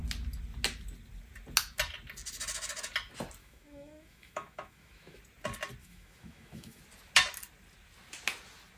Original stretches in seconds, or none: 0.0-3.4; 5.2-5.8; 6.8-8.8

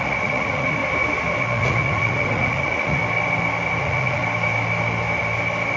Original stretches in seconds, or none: 0.8-1.4; 3.0-3.8; 4.2-5.8

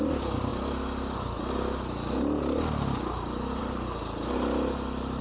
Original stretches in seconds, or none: 0.0-5.2

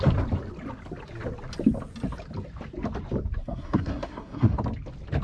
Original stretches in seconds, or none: 0.0-3.4; 4.6-5.2

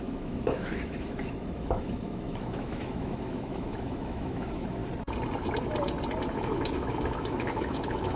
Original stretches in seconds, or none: 4.8-6.3

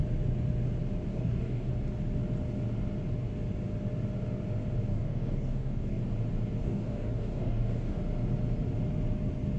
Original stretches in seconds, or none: 0.0-1.1; 1.7-4.9; 6.0-6.6; 8.0-9.6